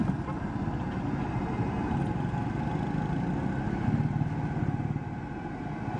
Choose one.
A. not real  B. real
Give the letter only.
B